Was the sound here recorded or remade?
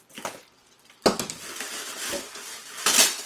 recorded